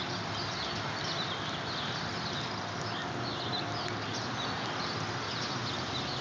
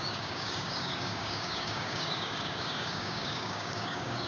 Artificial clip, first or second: second